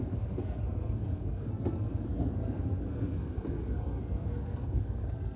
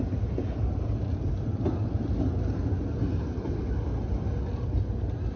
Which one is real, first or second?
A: second